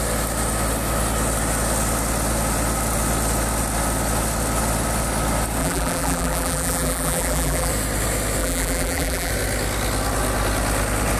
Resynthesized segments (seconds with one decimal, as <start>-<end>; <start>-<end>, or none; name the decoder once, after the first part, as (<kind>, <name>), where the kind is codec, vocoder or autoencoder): 5.6-7.7 (vocoder, BigVGAN v2); 8.4-9.3